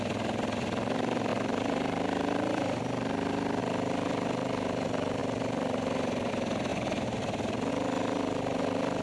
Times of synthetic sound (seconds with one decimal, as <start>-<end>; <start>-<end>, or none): 1.3-3.6; 6.7-7.7